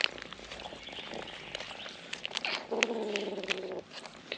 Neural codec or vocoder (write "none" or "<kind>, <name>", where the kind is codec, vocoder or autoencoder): none